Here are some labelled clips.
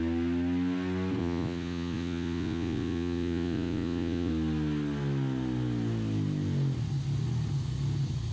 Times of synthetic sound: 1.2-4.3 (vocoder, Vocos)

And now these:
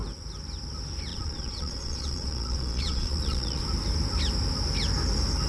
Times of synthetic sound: 1.1-3.6 (vocoder, Vocos)

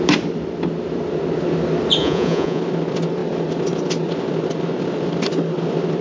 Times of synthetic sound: 2.0-2.6 (vocoder, Vocos)

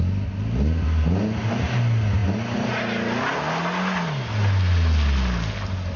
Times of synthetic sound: none